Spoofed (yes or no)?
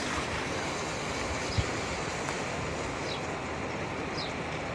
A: no